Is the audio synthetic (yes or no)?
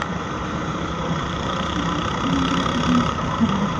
yes